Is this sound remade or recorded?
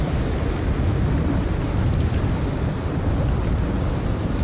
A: recorded